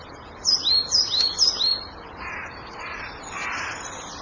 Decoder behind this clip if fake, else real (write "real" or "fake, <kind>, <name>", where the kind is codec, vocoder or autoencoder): real